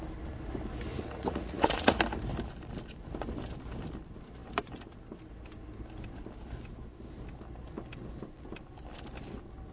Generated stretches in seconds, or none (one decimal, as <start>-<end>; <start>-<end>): 0.9-2.0